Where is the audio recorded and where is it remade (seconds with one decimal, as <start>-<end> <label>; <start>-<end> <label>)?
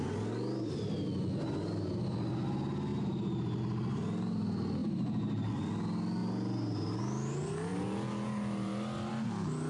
0.0-2.9 recorded; 2.9-3.6 remade; 3.6-4.8 recorded; 4.8-5.5 remade; 5.5-9.7 recorded